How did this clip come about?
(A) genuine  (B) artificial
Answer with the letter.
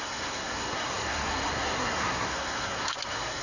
B